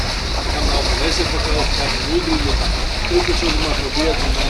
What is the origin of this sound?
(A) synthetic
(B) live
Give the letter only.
B